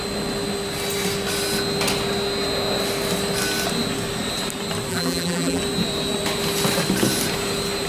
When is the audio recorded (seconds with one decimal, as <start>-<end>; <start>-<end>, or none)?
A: 0.0-4.9; 5.6-7.9